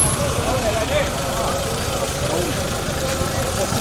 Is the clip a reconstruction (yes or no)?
yes